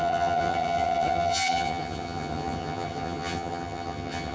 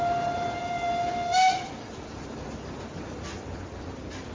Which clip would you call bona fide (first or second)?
second